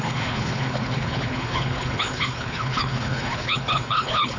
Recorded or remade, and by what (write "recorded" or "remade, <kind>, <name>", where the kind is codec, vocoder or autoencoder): remade, codec, HILCodec